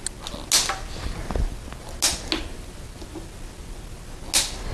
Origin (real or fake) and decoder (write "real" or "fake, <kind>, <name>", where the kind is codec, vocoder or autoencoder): real